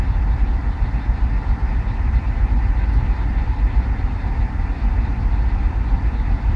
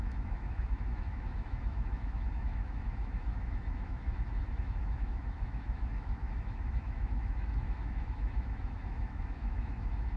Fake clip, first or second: second